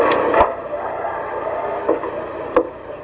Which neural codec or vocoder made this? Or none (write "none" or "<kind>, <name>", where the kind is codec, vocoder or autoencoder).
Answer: none